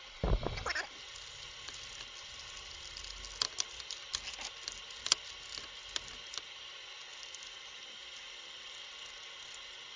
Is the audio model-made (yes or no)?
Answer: no